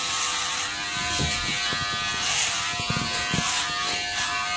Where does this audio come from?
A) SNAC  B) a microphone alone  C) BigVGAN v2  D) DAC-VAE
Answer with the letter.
B